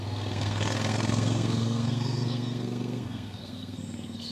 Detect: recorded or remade remade